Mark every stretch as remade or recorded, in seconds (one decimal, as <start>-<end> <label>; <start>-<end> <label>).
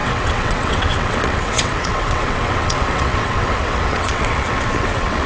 0.0-5.3 remade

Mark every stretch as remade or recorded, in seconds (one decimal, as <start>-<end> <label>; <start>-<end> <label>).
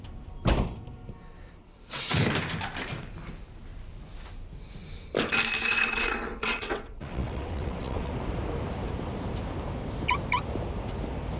0.0-1.6 recorded; 1.6-2.2 remade; 2.2-5.6 recorded; 5.6-8.1 remade; 8.1-11.4 recorded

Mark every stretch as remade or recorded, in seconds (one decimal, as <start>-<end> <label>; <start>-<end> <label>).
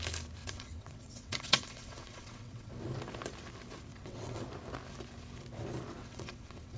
0.0-0.4 recorded; 0.4-2.7 remade; 2.7-3.9 recorded; 3.9-4.4 remade; 4.4-6.0 recorded; 6.0-6.8 remade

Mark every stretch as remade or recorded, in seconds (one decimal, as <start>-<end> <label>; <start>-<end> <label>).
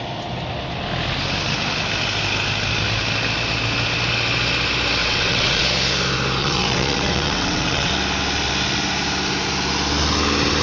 0.0-5.0 recorded; 5.0-5.6 remade; 5.6-6.4 recorded; 6.4-7.9 remade; 7.9-10.6 recorded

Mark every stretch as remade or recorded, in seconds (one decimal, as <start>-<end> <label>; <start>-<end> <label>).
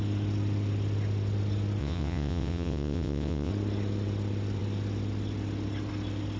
0.0-1.8 recorded; 1.8-3.5 remade; 3.5-6.4 recorded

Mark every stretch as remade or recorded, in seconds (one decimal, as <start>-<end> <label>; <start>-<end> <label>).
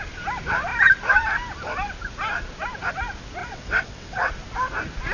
0.0-3.4 recorded; 3.4-4.3 remade; 4.3-5.1 recorded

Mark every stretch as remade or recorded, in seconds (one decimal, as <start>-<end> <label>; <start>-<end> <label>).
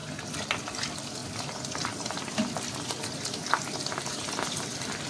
0.0-5.1 recorded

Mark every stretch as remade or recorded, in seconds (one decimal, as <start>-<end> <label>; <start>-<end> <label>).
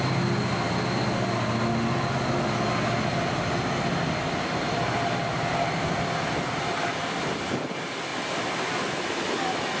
0.0-9.8 recorded